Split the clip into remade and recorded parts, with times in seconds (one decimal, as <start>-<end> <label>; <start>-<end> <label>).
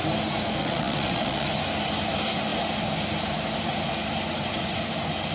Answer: 0.0-0.6 recorded; 0.6-1.5 remade; 1.5-5.3 recorded